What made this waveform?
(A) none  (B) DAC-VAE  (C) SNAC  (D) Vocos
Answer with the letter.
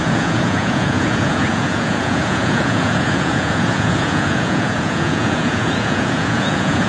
D